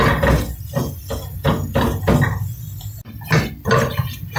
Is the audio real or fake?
real